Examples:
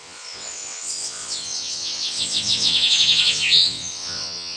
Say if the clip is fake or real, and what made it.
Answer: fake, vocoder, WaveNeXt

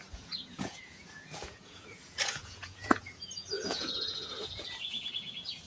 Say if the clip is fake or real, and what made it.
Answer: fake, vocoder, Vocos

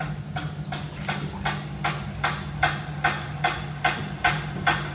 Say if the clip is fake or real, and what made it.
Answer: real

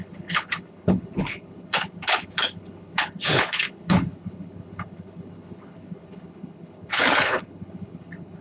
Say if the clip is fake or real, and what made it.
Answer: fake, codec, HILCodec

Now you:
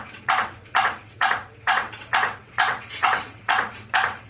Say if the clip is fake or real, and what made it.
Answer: fake, vocoder, WaveNeXt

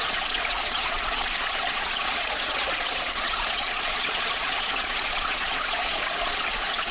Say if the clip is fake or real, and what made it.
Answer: fake, vocoder, Vocos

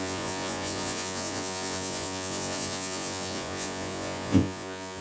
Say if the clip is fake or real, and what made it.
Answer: fake, vocoder, Vocos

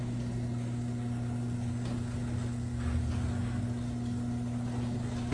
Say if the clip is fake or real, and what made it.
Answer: real